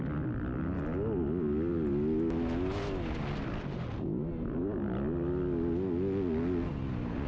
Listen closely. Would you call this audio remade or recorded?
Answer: recorded